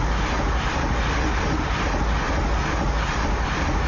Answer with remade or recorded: recorded